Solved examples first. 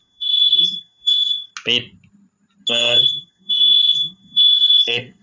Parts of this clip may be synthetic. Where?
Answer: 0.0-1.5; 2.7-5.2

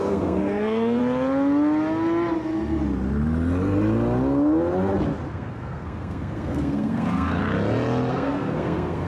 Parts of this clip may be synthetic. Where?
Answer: 0.0-1.0; 5.3-7.4; 8.1-9.1